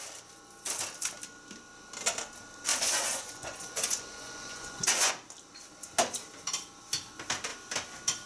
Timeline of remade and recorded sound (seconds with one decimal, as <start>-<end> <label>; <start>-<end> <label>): 0.0-2.7 recorded; 2.7-5.1 remade; 5.1-8.3 recorded